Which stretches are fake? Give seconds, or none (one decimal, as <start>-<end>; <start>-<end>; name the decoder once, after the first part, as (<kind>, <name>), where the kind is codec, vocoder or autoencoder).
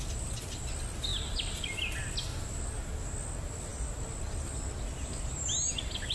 none